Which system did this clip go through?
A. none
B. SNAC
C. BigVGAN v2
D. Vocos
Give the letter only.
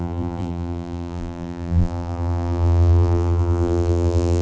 C